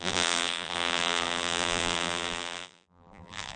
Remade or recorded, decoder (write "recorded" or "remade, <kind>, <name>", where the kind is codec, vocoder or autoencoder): remade, vocoder, BigVGAN v2